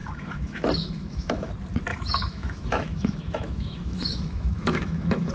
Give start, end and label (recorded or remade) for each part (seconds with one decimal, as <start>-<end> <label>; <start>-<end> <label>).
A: 0.0-1.5 remade; 1.5-1.9 recorded; 1.9-5.3 remade